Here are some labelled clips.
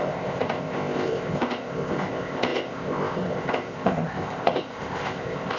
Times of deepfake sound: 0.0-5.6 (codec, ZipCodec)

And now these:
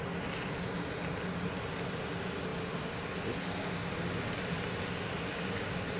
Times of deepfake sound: none

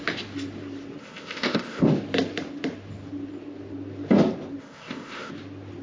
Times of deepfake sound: 1.0-1.8 (codec, ZipCodec); 4.6-5.3

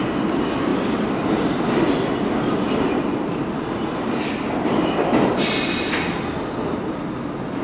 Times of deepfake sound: none

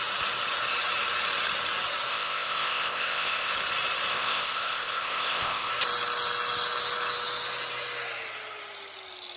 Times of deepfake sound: 2.1-3.5 (codec, ZipCodec); 4.1-5.7

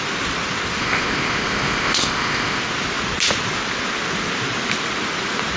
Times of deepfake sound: 0.8-2.6 (codec, ZipCodec)

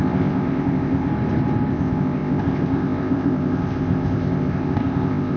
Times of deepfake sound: 0.0-1.1 (codec, ZipCodec); 1.7-5.4

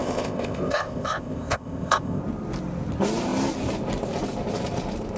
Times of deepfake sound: 0.0-2.2 (codec, ZipCodec)